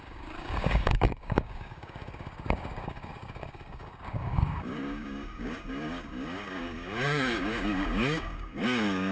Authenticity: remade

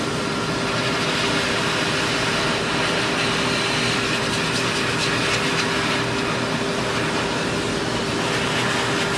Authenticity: recorded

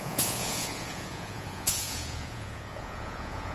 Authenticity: remade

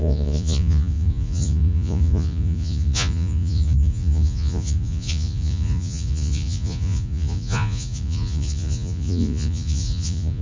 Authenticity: remade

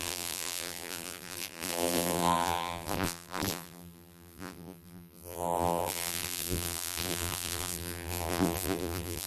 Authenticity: remade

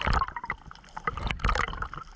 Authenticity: recorded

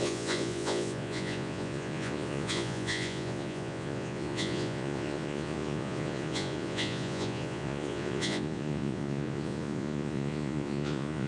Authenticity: remade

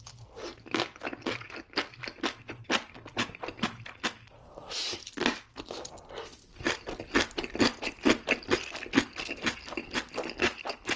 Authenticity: recorded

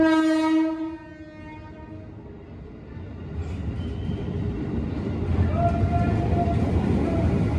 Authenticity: recorded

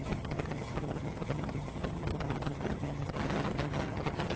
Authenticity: remade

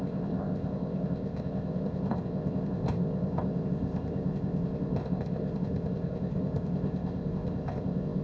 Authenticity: remade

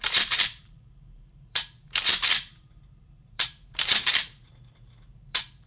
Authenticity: remade